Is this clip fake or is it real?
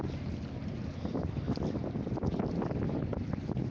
real